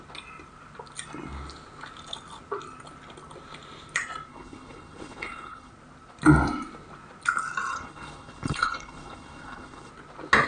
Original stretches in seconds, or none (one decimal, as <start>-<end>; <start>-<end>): 0.0-4.3; 5.7-7.7; 9.9-10.5

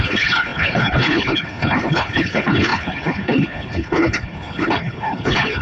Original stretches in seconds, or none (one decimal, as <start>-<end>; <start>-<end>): none

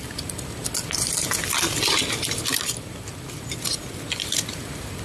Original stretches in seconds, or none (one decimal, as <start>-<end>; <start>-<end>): 0.0-5.0

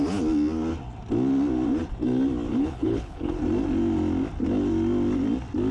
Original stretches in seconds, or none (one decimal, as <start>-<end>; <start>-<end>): 0.0-2.5; 3.4-5.7

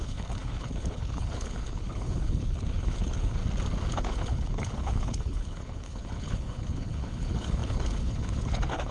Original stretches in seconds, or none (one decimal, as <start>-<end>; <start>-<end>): 3.4-3.9

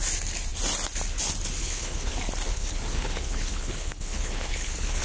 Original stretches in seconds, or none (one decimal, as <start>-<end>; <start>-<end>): 0.0-1.6; 2.1-2.5

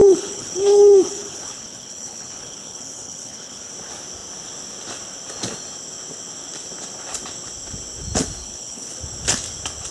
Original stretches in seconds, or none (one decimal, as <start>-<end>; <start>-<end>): 3.7-8.4; 8.9-9.9